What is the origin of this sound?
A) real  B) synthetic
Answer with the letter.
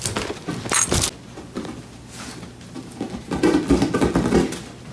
A